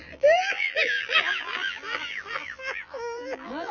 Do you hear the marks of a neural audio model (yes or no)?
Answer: yes